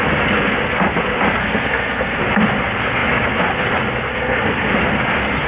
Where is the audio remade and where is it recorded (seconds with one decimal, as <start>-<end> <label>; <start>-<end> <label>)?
0.0-1.4 recorded; 1.4-2.2 remade; 2.2-4.1 recorded; 4.1-4.7 remade; 4.7-5.5 recorded